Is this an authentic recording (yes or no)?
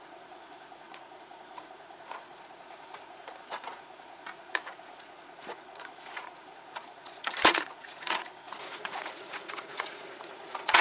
no